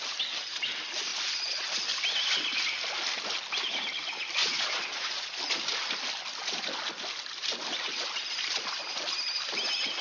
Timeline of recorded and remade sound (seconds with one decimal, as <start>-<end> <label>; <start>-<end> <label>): 0.0-4.4 recorded; 4.4-5.4 remade; 5.4-10.0 recorded